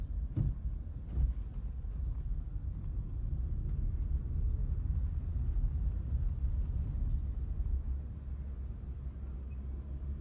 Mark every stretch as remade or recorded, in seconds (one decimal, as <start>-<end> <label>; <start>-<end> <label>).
0.0-10.2 recorded